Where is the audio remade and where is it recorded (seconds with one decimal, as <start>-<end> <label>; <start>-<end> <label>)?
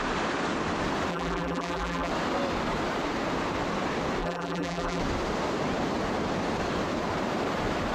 0.0-1.1 recorded; 1.1-2.1 remade; 2.1-4.2 recorded; 4.2-5.0 remade; 5.0-7.9 recorded